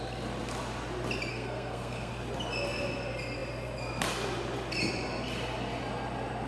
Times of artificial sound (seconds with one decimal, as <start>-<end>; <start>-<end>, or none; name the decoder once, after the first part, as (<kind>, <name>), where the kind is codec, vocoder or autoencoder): 1.3-2.1 (codec, SNAC)